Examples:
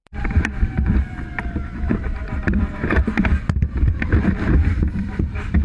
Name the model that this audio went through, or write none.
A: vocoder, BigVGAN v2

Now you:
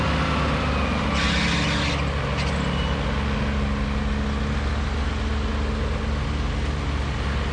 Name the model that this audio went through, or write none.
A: none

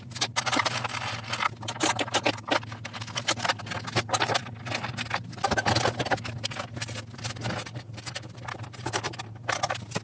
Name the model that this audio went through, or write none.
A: none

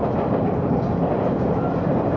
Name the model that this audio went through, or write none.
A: none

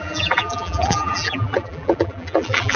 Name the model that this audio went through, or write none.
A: vocoder, BigVGAN v2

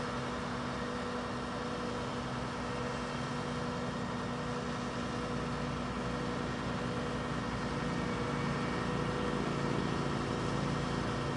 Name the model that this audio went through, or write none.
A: none